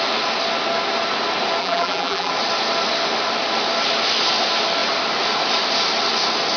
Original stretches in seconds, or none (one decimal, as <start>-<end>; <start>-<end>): 0.0-1.6; 2.3-6.6